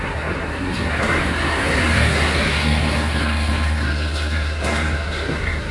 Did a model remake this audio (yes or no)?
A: yes